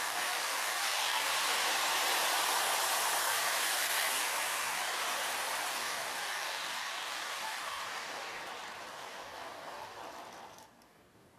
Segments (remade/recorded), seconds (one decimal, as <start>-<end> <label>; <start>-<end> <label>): 0.0-1.3 remade; 1.3-3.2 recorded; 3.2-5.0 remade; 5.0-5.7 recorded; 5.7-8.4 remade; 8.4-8.9 recorded; 8.9-10.0 remade; 10.0-10.6 recorded; 10.6-11.4 remade